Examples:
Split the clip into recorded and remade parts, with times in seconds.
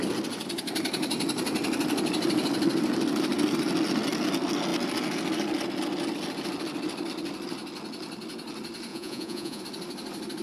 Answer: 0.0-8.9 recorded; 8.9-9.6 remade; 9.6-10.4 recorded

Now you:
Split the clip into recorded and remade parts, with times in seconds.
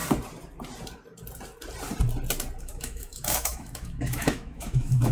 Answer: 0.0-2.6 recorded; 2.6-5.1 remade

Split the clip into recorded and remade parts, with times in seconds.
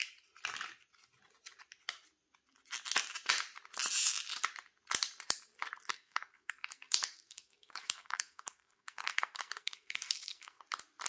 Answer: 0.0-5.9 recorded; 5.9-10.6 remade; 10.6-11.1 recorded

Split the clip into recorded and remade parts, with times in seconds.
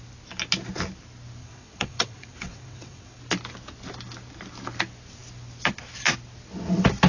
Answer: 0.0-1.4 recorded; 1.4-3.2 remade; 3.2-7.1 recorded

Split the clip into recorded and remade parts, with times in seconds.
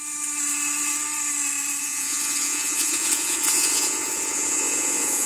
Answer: 0.0-1.8 recorded; 1.8-5.3 remade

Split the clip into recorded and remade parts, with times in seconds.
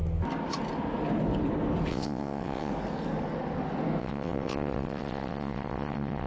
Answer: 0.0-1.9 recorded; 1.9-2.7 remade; 2.7-4.0 recorded; 4.0-6.3 remade